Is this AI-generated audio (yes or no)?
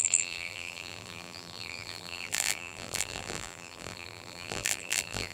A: yes